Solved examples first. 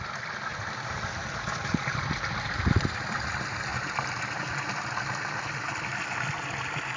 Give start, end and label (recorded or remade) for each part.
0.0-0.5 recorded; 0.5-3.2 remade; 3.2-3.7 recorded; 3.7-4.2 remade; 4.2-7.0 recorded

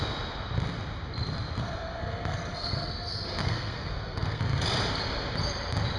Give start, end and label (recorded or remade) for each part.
0.0-1.6 recorded; 1.6-2.9 remade; 2.9-3.4 recorded; 3.4-4.4 remade; 4.4-6.0 recorded

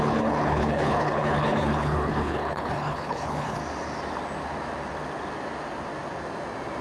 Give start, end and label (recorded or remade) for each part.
0.0-3.6 remade; 3.6-6.8 recorded

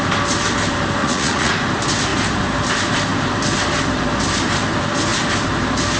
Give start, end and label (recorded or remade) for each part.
0.0-1.0 recorded; 1.0-1.5 remade; 1.5-6.0 recorded

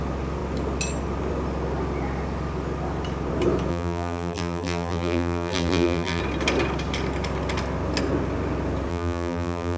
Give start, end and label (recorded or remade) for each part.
0.0-3.7 recorded; 3.7-6.2 remade; 6.2-8.9 recorded; 8.9-9.8 remade

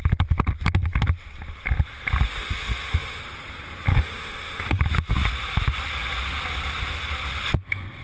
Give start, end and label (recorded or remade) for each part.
0.0-2.3 recorded; 2.3-3.2 remade; 3.2-3.9 recorded; 3.9-4.8 remade; 4.8-8.0 recorded